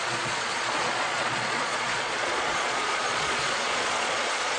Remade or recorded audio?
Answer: remade